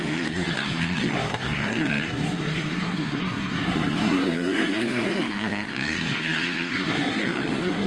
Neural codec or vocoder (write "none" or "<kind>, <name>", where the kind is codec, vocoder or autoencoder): codec, SNAC